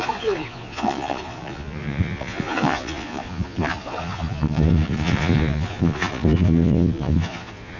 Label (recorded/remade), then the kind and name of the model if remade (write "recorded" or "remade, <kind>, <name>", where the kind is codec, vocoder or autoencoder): remade, vocoder, Vocos